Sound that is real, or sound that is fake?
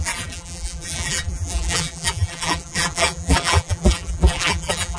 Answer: fake